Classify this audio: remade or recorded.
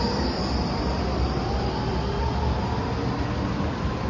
recorded